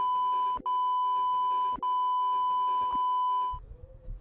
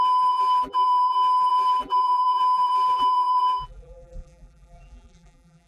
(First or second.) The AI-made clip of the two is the second